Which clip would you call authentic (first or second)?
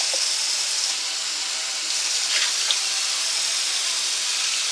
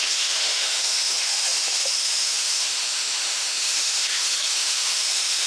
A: first